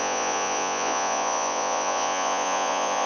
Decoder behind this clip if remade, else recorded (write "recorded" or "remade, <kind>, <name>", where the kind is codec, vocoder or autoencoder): remade, vocoder, Vocos